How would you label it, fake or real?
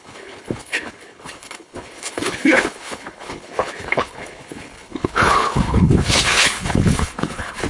fake